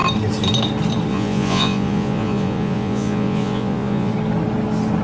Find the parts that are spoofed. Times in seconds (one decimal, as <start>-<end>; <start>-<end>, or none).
1.1-4.1